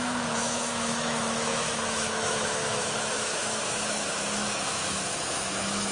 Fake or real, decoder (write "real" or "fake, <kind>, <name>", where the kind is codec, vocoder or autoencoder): fake, autoencoder, DAC-VAE